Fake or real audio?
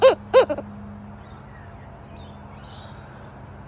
real